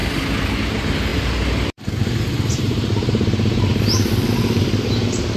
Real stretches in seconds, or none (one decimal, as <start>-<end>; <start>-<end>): none